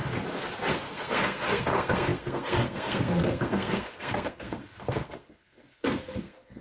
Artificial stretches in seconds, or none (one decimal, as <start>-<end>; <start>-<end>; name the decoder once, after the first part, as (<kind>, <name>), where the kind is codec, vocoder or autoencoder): 0.7-6.6 (codec, SNAC)